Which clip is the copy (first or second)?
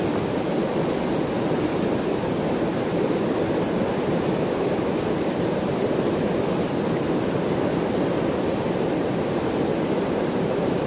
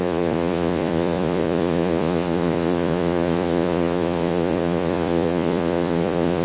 second